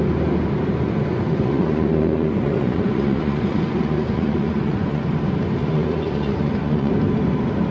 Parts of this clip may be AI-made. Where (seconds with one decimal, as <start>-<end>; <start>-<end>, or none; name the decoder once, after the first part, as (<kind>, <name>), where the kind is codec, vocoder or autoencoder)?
1.1-5.1 (vocoder, Vocos); 5.6-6.9